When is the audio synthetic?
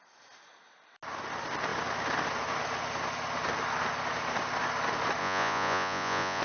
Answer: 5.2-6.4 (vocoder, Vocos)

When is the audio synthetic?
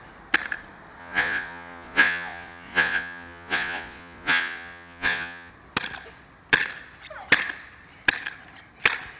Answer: 1.0-5.5 (vocoder, Vocos)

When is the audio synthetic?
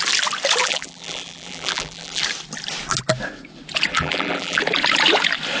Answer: 0.6-2.2 (vocoder, BigVGAN v2); 3.9-4.6